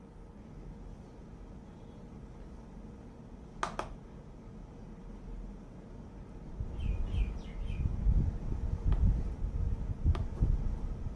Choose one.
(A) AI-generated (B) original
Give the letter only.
B